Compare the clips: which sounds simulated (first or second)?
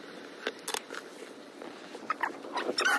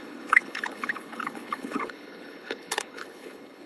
second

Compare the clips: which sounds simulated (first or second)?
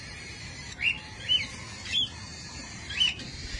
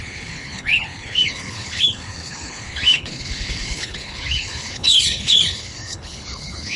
second